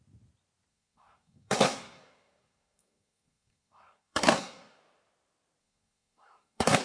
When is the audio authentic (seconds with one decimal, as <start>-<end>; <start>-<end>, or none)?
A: 0.0-0.7; 4.8-5.6